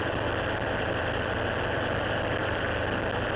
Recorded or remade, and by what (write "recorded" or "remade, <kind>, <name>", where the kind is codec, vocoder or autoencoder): recorded